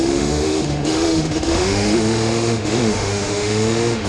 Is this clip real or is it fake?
fake